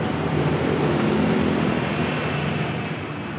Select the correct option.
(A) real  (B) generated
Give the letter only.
A